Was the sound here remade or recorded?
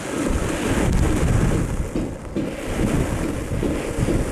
recorded